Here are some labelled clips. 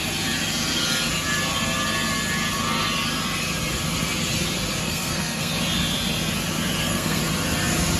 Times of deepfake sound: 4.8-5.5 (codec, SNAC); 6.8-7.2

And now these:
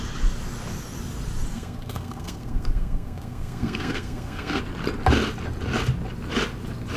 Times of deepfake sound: 1.5-4.6 (codec, SNAC)

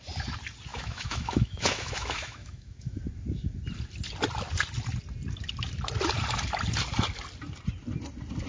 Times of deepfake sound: 0.7-3.0 (autoencoder, DAC-VAE)